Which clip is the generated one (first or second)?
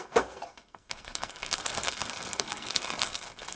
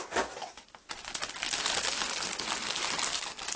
first